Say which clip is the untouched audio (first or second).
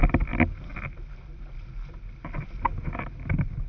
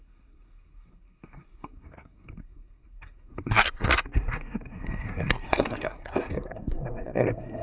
first